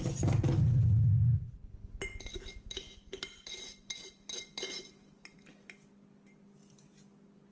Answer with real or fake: real